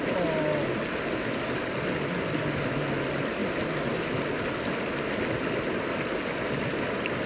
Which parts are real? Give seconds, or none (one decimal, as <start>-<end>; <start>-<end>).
0.0-7.3